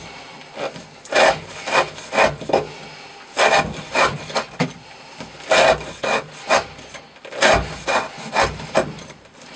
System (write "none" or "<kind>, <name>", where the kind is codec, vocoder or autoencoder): none